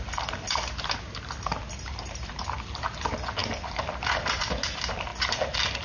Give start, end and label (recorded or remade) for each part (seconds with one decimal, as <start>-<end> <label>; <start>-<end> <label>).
0.0-5.8 recorded

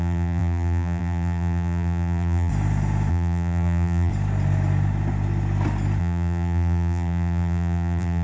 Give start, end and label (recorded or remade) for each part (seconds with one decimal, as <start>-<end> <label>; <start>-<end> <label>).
0.0-2.5 remade; 2.5-3.1 recorded; 3.1-4.1 remade; 4.1-6.0 recorded; 6.0-8.2 remade

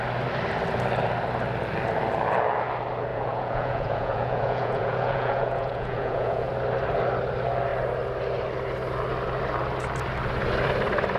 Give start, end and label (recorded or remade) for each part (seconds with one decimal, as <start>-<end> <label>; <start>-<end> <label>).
0.0-3.1 recorded; 3.1-6.5 remade; 6.5-11.2 recorded

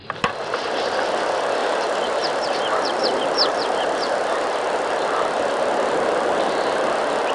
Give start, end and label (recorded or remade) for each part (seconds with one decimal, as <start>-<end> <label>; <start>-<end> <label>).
0.0-0.7 remade; 0.7-1.6 recorded; 1.6-3.2 remade; 3.2-7.3 recorded

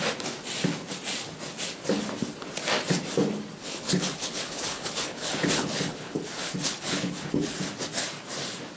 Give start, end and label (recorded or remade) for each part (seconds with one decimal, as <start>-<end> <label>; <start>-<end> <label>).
0.0-3.6 recorded; 3.6-7.5 remade; 7.5-8.8 recorded

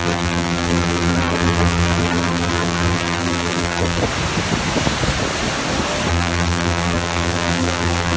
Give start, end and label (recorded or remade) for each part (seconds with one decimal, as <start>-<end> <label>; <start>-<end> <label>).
0.0-4.0 remade; 4.0-6.1 recorded; 6.1-8.2 remade

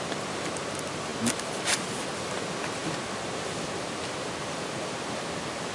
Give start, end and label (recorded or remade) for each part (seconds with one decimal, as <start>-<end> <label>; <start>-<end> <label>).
0.0-5.7 recorded

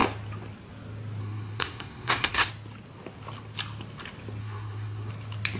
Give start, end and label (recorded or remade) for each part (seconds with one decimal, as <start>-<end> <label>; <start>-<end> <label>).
0.0-1.2 recorded; 1.2-2.5 remade; 2.5-4.4 recorded; 4.4-5.1 remade; 5.1-5.6 recorded